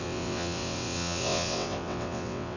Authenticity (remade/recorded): remade